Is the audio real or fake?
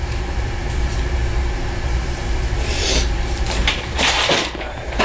fake